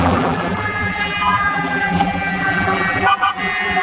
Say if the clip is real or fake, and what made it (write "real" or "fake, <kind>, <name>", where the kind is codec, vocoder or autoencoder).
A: fake, vocoder, BigVGAN v2